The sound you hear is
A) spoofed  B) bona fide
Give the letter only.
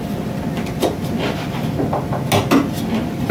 B